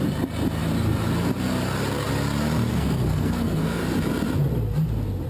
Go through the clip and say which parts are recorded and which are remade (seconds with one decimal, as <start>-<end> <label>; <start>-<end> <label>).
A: 0.0-2.7 recorded; 2.7-3.8 remade; 3.8-5.3 recorded